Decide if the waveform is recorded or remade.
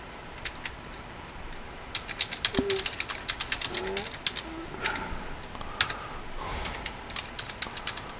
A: recorded